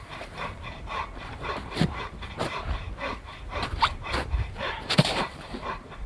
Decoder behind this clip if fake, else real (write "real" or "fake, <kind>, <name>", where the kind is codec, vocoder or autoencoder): fake, vocoder, BigVGAN v2